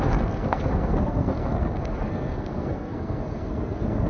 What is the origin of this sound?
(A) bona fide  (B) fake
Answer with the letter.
B